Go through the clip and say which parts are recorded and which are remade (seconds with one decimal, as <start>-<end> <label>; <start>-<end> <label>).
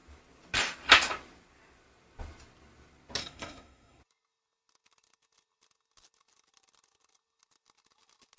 0.0-3.2 recorded; 3.2-4.0 remade; 4.0-8.4 recorded